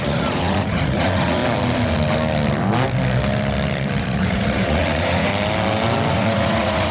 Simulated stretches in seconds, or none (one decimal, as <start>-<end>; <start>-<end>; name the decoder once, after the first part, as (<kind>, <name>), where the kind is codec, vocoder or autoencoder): 0.0-1.4 (vocoder, Vocos); 4.0-5.3; 6.1-6.9